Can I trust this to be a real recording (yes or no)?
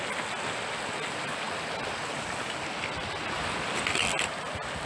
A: yes